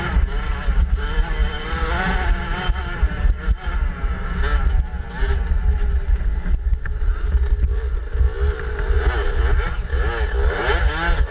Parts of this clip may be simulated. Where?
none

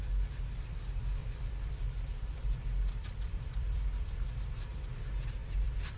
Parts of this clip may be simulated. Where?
1.2-4.8 (vocoder, BigVGAN v2); 5.4-6.0